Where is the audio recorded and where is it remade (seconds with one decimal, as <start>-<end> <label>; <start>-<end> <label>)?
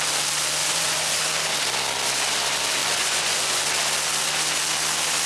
0.0-0.6 recorded; 0.6-1.2 remade; 1.2-2.8 recorded; 2.8-3.6 remade; 3.6-5.3 recorded